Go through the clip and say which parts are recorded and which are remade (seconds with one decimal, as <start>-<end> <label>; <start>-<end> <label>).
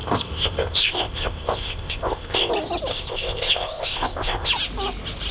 0.0-2.5 remade; 2.5-2.9 recorded; 2.9-4.5 remade; 4.5-5.3 recorded